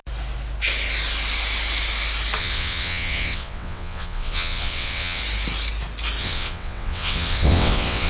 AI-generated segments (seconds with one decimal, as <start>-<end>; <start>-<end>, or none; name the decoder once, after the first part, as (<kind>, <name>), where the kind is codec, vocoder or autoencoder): 2.4-5.2 (vocoder, WaveNeXt); 6.2-8.1